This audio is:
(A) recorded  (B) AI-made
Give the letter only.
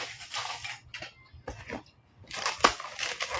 A